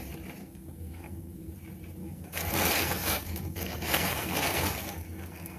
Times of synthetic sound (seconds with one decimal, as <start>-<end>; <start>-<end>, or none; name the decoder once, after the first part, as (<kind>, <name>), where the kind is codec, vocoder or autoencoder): 0.4-1.5 (codec, SNAC); 2.0-5.6